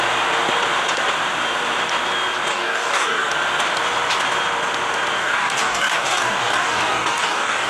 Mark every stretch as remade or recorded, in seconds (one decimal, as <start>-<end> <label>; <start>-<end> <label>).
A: 0.0-2.5 recorded; 2.5-3.3 remade; 3.3-5.2 recorded; 5.2-7.7 remade